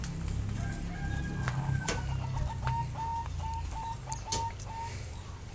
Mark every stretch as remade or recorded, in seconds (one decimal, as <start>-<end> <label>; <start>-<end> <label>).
0.0-5.5 recorded